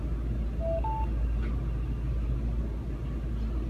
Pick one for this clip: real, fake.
real